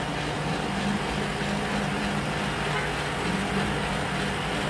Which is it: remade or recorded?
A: recorded